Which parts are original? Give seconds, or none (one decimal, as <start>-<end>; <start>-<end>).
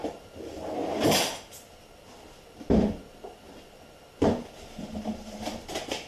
0.0-6.1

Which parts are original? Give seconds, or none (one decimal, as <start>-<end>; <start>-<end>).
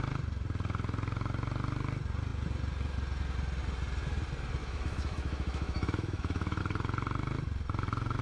0.0-4.6; 6.6-8.2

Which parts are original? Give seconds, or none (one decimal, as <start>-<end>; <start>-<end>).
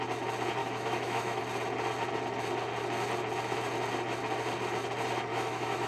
0.0-0.6; 1.4-5.3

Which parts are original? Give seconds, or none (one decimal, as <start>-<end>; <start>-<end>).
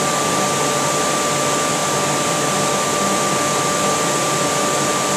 0.0-5.2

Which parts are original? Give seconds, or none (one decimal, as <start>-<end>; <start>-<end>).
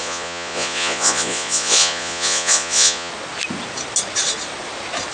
3.1-5.1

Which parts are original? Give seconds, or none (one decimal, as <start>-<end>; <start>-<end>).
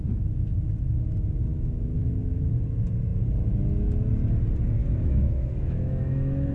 0.0-1.5; 2.5-4.8